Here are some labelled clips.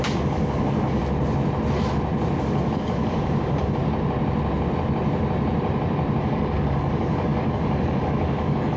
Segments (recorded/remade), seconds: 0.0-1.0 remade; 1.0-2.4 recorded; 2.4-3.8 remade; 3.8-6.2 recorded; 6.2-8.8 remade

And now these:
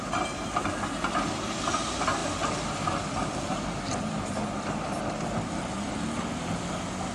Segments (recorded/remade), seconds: 0.0-7.1 recorded